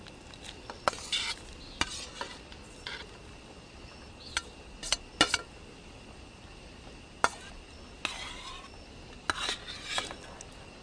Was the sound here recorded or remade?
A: recorded